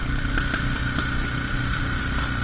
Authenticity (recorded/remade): recorded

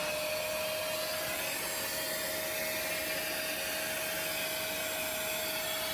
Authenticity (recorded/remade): recorded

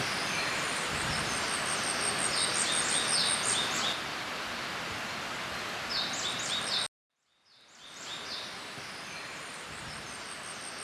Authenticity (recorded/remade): recorded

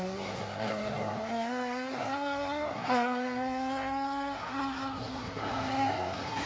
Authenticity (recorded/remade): remade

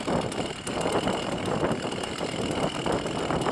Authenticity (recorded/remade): remade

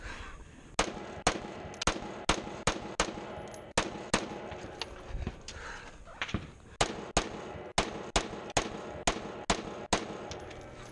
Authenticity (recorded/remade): recorded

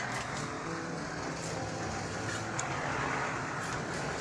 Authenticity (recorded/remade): recorded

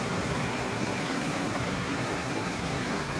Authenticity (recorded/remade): remade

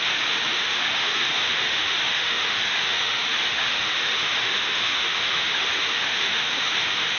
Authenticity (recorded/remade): remade